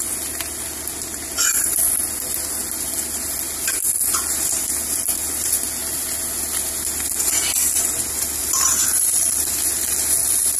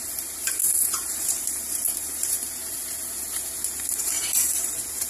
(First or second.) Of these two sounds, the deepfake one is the second